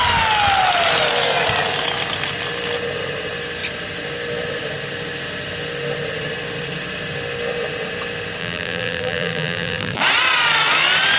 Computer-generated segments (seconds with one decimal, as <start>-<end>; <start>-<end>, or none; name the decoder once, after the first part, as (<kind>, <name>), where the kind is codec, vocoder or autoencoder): 8.4-10.0 (vocoder, BigVGAN v2)